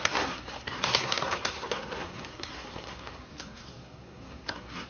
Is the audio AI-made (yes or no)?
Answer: yes